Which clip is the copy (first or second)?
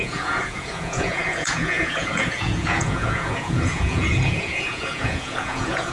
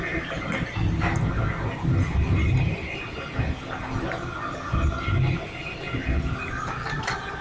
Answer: first